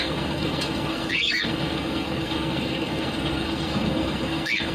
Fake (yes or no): yes